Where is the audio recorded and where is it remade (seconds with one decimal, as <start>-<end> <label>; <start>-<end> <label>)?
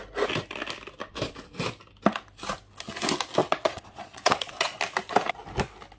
0.0-3.4 recorded; 3.4-4.8 remade; 4.8-6.0 recorded